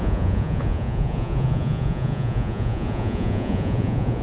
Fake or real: fake